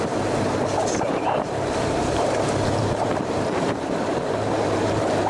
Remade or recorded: remade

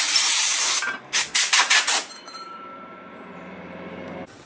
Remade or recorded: remade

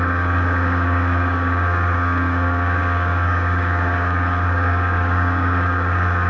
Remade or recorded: remade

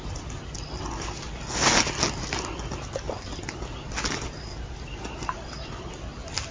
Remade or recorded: recorded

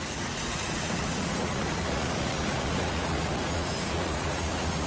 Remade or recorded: remade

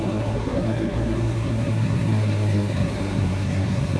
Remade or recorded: remade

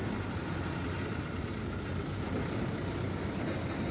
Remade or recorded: recorded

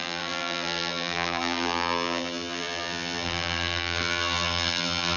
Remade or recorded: remade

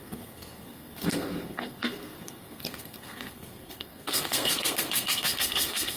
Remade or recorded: remade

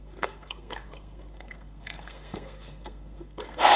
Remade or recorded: remade